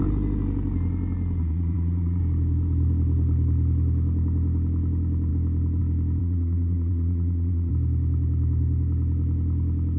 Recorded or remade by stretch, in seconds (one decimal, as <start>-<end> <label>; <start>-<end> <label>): 0.0-1.4 recorded; 1.4-2.2 remade; 2.2-6.2 recorded; 6.2-7.7 remade; 7.7-10.0 recorded